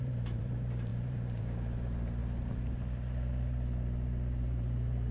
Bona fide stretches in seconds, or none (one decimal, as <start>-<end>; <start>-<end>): 2.2-4.4